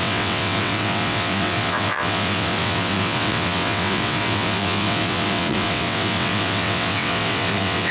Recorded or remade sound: remade